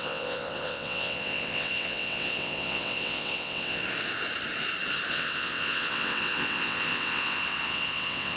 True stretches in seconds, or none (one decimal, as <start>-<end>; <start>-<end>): 3.8-5.1